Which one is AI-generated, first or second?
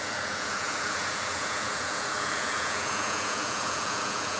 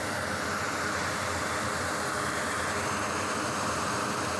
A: first